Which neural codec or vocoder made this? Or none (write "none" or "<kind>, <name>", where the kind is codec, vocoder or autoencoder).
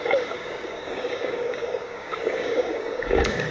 codec, DAC